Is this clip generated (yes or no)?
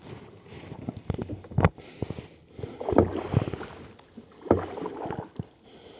no